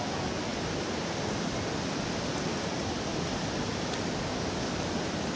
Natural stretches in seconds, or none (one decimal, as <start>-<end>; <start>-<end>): 0.0-5.4